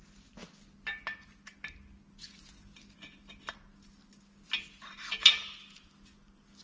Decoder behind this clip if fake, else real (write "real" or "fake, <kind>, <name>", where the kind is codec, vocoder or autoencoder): real